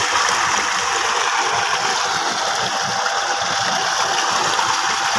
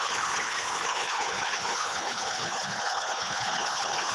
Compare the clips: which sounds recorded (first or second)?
first